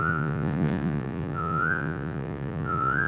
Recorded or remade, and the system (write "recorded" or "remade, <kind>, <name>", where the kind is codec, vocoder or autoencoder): remade, vocoder, Vocos